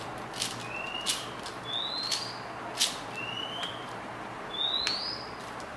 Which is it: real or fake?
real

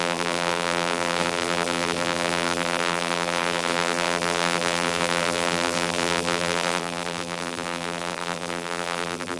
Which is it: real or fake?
fake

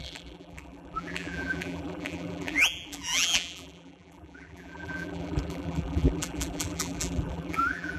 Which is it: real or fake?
fake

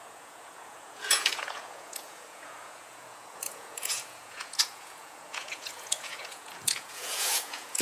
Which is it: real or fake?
fake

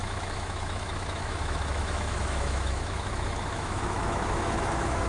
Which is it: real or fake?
fake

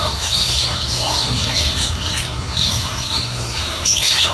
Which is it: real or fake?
fake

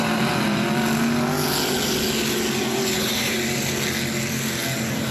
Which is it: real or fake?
real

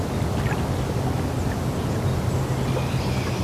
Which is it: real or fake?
real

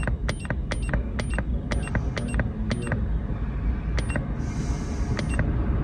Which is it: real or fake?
real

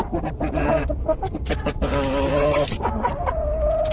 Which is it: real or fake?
real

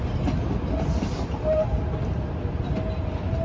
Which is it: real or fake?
real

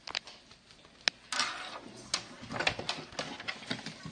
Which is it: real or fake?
real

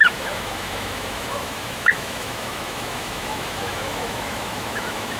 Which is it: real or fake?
fake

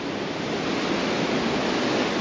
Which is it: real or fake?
real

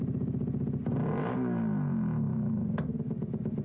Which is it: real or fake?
real